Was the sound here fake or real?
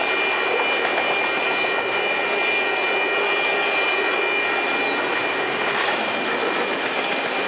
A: real